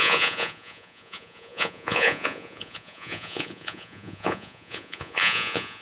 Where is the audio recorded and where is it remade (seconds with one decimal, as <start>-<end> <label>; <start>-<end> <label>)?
0.0-5.8 remade